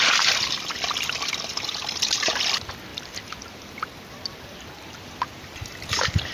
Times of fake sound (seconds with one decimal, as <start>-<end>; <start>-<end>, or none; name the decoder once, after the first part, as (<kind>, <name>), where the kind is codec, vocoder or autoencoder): 2.9-5.5 (vocoder, BigVGAN v2)